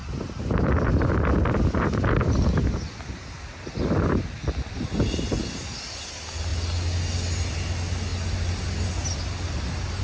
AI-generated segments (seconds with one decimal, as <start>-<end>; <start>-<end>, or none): none